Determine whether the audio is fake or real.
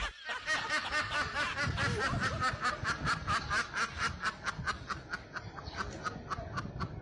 real